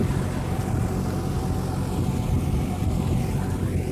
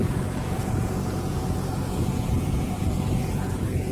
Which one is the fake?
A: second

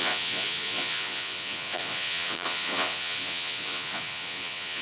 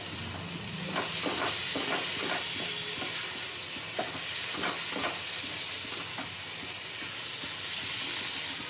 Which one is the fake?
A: first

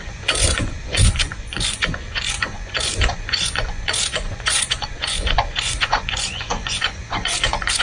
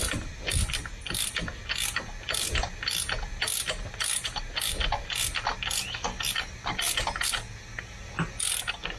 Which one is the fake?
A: first